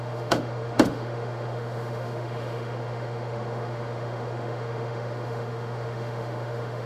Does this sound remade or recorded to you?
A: remade